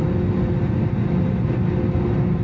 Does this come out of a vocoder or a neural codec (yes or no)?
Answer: no